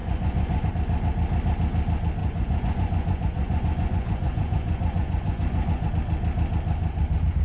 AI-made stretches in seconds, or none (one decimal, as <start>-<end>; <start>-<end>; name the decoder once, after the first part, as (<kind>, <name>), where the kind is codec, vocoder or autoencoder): 0.0-0.7 (vocoder, Vocos); 2.2-5.9